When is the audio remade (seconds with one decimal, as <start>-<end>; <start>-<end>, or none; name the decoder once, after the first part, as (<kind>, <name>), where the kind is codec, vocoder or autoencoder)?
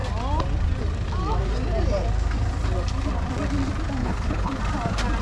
4.0-4.6 (codec, HILCodec)